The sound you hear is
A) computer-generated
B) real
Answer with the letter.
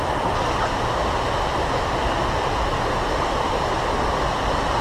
B